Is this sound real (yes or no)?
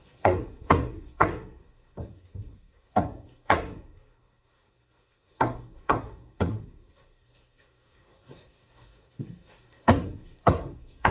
no